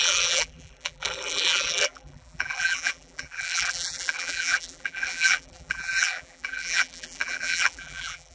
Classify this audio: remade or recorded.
remade